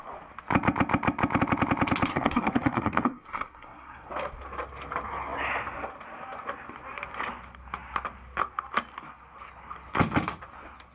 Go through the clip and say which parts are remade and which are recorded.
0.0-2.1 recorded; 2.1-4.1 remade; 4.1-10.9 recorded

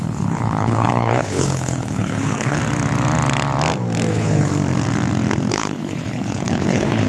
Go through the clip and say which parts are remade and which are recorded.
0.0-2.6 remade; 2.6-4.1 recorded; 4.1-4.5 remade; 4.5-5.5 recorded; 5.5-7.1 remade

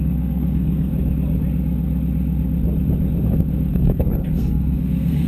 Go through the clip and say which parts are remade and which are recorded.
0.0-0.9 remade; 0.9-3.7 recorded; 3.7-5.3 remade

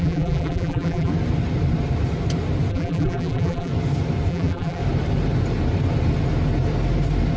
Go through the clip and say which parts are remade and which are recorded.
0.0-1.1 remade; 1.1-2.7 recorded; 2.7-3.7 remade; 3.7-4.3 recorded; 4.3-4.8 remade; 4.8-7.4 recorded

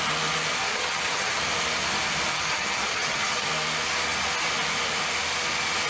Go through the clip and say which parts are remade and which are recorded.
0.0-0.7 recorded; 0.7-1.4 remade; 1.4-2.3 recorded; 2.3-3.5 remade; 3.5-5.9 recorded